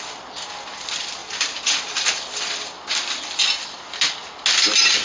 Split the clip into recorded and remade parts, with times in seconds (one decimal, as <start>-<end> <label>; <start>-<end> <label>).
0.0-1.2 recorded; 1.2-2.5 remade; 2.5-5.0 recorded